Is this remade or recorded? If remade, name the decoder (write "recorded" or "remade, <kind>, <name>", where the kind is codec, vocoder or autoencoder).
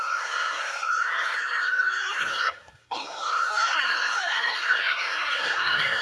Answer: remade, codec, SNAC